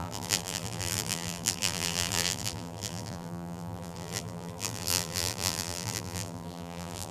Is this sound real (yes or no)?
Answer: no